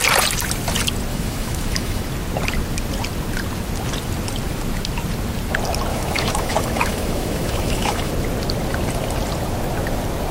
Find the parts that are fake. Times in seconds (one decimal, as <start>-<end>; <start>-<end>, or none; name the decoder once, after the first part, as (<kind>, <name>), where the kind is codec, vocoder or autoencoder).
1.1-2.0 (autoencoder, DAC-VAE); 5.9-8.1

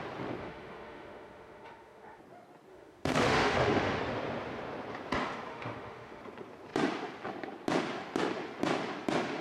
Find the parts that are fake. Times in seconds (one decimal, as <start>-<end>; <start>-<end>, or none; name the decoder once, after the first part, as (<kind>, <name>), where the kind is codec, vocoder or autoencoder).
0.4-2.2 (autoencoder, DAC-VAE); 2.7-4.0; 5.5-6.2